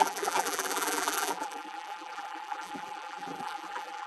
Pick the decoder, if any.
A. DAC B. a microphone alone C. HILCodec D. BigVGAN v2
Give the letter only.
D